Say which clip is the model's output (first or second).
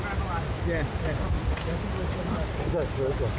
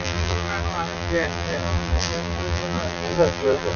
second